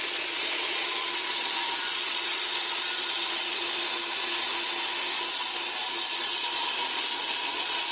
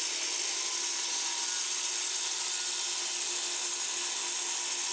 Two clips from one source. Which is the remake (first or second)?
first